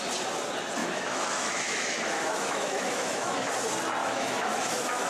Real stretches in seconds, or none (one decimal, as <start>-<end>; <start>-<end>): 0.0-0.8; 3.5-4.0